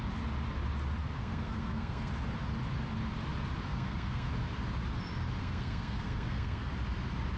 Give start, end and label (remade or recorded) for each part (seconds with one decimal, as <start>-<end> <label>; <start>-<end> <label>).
0.0-1.0 recorded; 1.0-2.1 remade; 2.1-3.7 recorded; 3.7-4.3 remade; 4.3-5.4 recorded; 5.4-6.7 remade; 6.7-7.4 recorded